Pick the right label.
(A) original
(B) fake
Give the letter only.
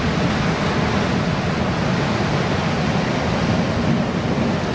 A